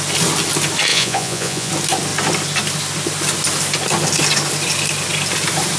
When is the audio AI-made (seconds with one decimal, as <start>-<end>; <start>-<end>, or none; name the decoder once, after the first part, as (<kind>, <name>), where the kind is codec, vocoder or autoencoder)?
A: 0.9-1.7 (vocoder, Vocos)

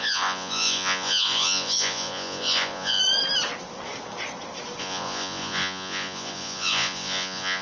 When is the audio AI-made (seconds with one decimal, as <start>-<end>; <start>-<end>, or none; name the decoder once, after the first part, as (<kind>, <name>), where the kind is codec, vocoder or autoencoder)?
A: 0.0-3.0 (vocoder, Vocos); 4.8-7.6

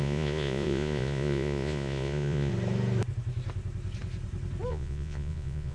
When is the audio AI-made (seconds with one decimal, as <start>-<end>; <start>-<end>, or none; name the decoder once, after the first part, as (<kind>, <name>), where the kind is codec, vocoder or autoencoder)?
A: 0.0-2.5 (vocoder, Vocos); 4.7-5.7

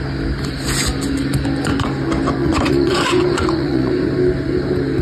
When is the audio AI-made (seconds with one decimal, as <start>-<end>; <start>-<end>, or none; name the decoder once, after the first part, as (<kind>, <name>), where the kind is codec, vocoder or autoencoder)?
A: 2.4-3.9 (vocoder, Vocos)